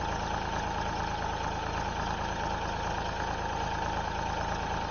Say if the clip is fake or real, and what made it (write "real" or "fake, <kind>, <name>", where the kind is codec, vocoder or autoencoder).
real